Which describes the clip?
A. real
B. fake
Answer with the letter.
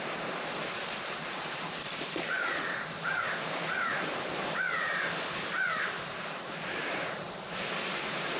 B